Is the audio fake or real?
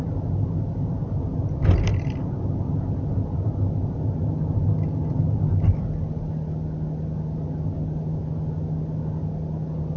real